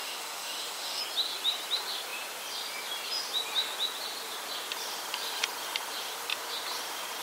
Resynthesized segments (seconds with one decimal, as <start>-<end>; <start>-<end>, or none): 0.0-1.0